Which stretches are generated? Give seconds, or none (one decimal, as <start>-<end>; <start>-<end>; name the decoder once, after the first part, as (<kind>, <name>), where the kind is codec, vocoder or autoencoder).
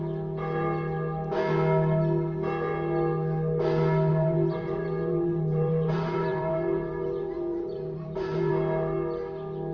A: 4.1-8.5 (vocoder, BigVGAN v2)